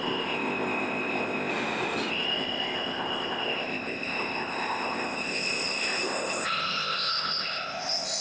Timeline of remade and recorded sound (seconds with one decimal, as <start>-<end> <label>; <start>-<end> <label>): 0.0-1.5 remade; 1.5-2.1 recorded; 2.1-8.2 remade